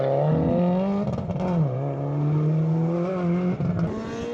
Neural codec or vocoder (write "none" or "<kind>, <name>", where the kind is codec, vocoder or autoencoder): none